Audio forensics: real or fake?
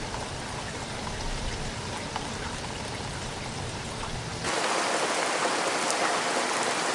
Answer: real